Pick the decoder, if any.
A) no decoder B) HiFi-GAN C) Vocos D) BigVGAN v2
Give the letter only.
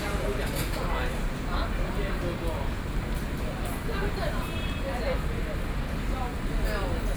A